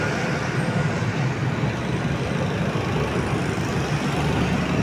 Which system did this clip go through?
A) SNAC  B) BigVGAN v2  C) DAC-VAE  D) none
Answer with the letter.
D